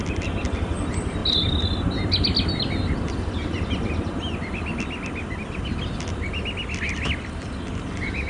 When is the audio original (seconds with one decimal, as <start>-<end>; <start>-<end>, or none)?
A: 0.0-8.3